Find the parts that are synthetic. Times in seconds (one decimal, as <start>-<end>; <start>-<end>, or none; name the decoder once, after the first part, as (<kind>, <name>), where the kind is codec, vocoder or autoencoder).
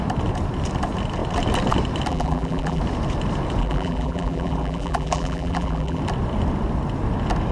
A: 2.1-2.8 (vocoder, BigVGAN v2); 3.6-6.0